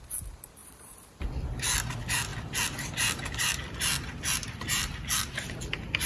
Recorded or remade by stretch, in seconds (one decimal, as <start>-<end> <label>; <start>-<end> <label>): 0.0-6.1 recorded